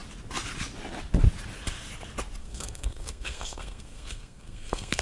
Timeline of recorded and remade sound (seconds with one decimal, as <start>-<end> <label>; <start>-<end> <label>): 0.0-2.4 recorded; 2.4-5.0 remade